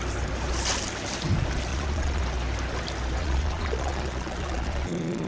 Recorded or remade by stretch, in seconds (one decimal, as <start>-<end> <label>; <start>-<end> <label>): 0.0-1.7 recorded; 1.7-2.2 remade; 2.2-3.2 recorded; 3.2-5.3 remade